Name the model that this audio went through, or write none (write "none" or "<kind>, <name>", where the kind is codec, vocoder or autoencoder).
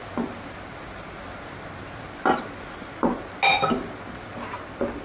none